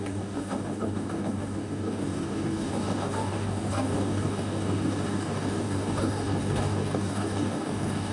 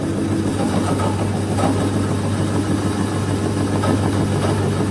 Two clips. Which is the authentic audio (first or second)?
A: second